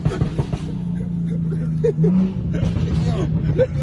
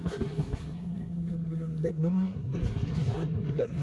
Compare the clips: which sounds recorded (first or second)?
first